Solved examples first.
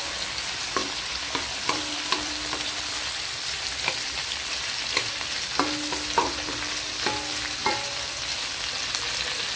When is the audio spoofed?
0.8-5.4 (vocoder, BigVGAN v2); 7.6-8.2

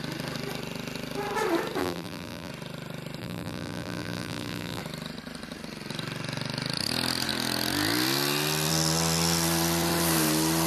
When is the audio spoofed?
1.8-2.5 (vocoder, BigVGAN v2); 3.2-4.8

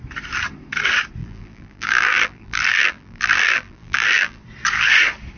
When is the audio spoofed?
1.2-4.4 (vocoder, BigVGAN v2)

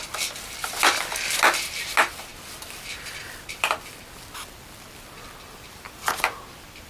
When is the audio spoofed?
2.3-5.8 (vocoder, BigVGAN v2)

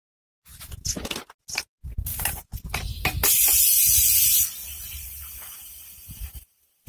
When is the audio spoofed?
4.6-5.3 (vocoder, BigVGAN v2)

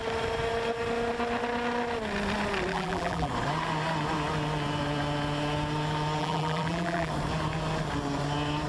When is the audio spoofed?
2.7-3.3 (vocoder, BigVGAN v2); 6.2-7.1